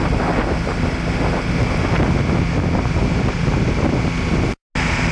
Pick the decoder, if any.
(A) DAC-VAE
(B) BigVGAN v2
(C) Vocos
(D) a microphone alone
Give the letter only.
D